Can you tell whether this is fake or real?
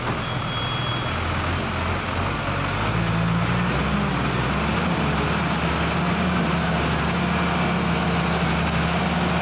real